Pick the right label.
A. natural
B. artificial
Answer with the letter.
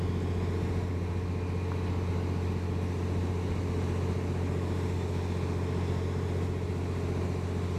A